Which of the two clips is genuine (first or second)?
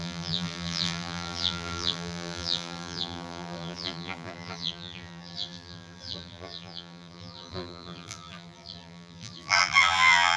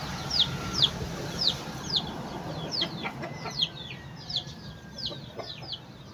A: second